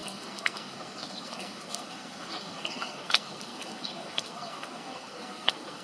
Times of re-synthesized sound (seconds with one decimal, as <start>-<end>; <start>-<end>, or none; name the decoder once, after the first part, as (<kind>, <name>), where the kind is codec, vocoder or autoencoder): 0.0-5.8 (codec, SNAC)